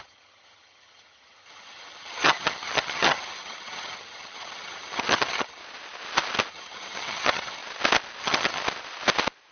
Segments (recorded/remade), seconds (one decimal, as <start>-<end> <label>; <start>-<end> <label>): 0.0-5.6 remade; 5.6-6.5 recorded; 6.5-7.6 remade; 7.6-8.2 recorded; 8.2-8.6 remade; 8.6-9.5 recorded